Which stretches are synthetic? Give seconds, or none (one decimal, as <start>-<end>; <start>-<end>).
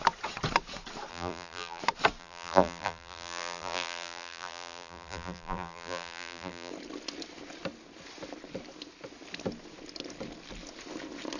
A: 1.1-1.8; 2.2-6.7